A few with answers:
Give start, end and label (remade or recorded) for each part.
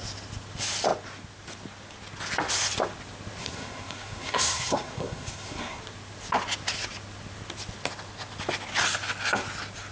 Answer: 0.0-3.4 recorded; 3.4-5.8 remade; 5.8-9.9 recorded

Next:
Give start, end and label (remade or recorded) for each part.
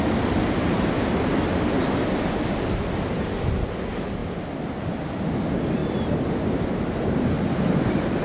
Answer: 0.0-8.2 recorded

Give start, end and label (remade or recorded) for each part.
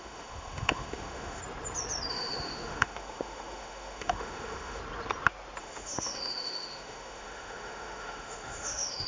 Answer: 0.0-1.4 remade; 1.4-2.1 recorded; 2.1-4.8 remade; 4.8-5.6 recorded; 5.6-9.1 remade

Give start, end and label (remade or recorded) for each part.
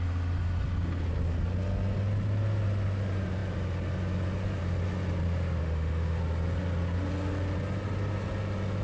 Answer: 0.0-5.6 recorded; 5.6-6.2 remade; 6.2-8.8 recorded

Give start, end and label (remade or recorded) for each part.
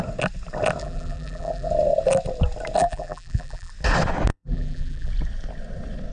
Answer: 0.0-0.8 recorded; 0.8-1.7 remade; 1.7-2.8 recorded; 2.8-3.7 remade; 3.7-4.3 recorded; 4.3-5.1 remade; 5.1-6.1 recorded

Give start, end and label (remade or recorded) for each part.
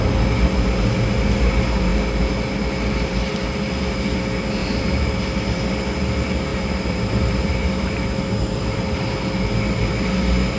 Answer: 0.0-4.6 recorded; 4.6-5.6 remade; 5.6-6.5 recorded; 6.5-9.1 remade; 9.1-10.6 recorded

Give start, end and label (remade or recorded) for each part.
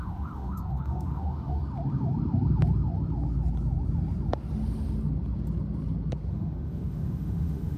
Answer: 0.0-1.6 remade; 1.6-6.3 recorded; 6.3-7.8 remade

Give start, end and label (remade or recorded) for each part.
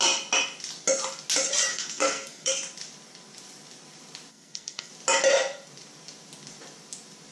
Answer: 0.0-1.7 recorded; 1.7-2.5 remade; 2.5-4.3 recorded; 4.3-4.9 remade; 4.9-7.3 recorded